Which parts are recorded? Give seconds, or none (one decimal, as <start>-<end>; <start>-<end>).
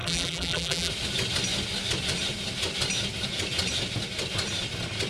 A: 0.9-5.1